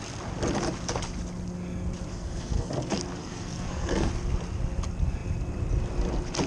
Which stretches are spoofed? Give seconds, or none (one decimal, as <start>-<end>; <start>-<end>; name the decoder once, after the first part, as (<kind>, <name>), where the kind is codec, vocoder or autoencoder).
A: 2.1-2.7 (codec, SNAC); 3.2-4.1